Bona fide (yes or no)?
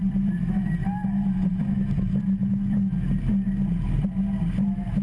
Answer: yes